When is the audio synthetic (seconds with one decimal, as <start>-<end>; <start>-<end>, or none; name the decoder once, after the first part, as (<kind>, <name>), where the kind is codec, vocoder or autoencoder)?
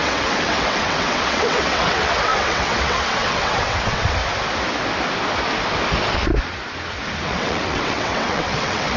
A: 0.0-4.2 (vocoder, WaveNeXt); 7.2-9.0